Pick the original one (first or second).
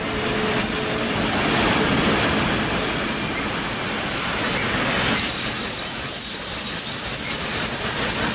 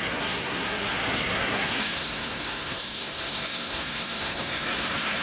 first